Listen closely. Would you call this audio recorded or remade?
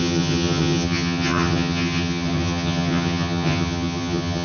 remade